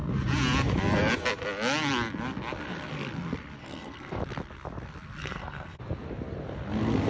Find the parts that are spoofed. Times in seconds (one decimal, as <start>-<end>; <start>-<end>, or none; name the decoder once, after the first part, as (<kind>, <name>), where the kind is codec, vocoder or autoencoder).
3.6-4.2 (codec, SNAC); 5.2-5.8